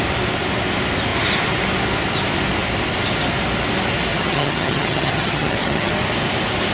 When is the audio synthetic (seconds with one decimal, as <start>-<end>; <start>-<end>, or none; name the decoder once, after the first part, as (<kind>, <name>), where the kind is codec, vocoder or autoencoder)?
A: 4.1-5.9 (vocoder, HiFi-GAN)